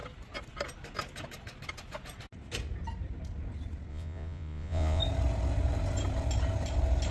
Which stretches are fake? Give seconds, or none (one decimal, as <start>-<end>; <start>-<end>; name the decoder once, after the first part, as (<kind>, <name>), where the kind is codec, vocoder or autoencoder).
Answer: 3.9-5.0 (vocoder, Vocos)